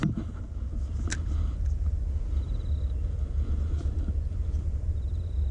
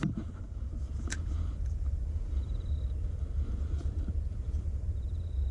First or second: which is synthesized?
second